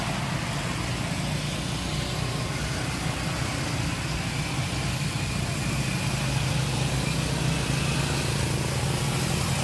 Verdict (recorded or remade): recorded